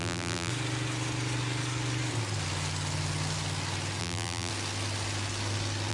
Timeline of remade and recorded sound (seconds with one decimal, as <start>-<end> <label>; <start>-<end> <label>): 0.0-0.5 remade; 0.5-4.0 recorded; 4.0-4.5 remade; 4.5-5.9 recorded